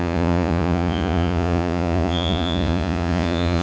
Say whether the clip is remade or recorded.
remade